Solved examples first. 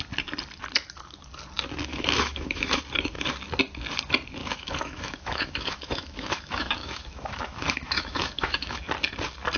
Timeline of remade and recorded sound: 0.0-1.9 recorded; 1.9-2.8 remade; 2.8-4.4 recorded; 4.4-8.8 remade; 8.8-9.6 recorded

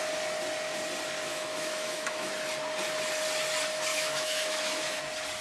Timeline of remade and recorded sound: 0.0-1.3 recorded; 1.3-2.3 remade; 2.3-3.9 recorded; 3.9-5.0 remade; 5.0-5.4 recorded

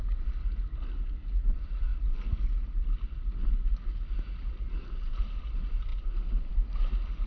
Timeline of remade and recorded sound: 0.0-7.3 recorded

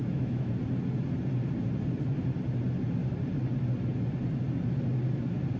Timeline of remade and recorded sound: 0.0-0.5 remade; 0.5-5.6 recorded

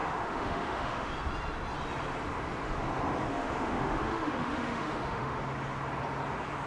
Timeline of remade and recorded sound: 0.0-1.1 remade; 1.1-3.3 recorded; 3.3-5.4 remade; 5.4-6.7 recorded

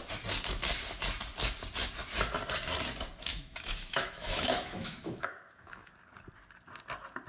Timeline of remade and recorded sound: 0.0-3.3 recorded; 3.3-5.9 remade; 5.9-7.3 recorded

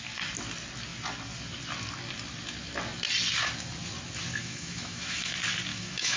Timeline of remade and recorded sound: 0.0-4.4 recorded; 4.4-5.3 remade; 5.3-5.7 recorded; 5.7-6.2 remade

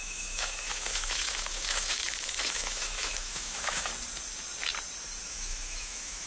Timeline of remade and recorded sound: 0.0-3.9 remade; 3.9-5.3 recorded; 5.3-6.3 remade